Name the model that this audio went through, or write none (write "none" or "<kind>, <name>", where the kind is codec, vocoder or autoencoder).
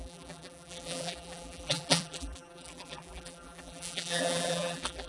vocoder, BigVGAN v2